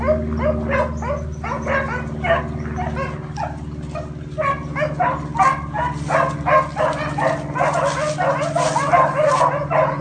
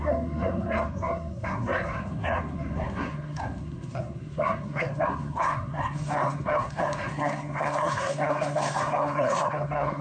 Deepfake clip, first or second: second